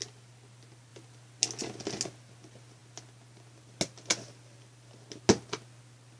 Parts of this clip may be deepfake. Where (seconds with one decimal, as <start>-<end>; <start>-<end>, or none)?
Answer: none